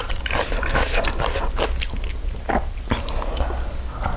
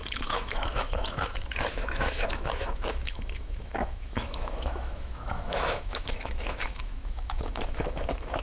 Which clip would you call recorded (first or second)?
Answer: first